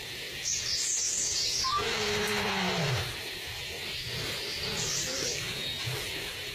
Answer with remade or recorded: recorded